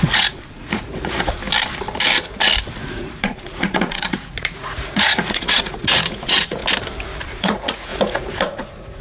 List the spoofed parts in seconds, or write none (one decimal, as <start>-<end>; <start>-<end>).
0.0-1.4; 2.9-6.6; 7.4-9.0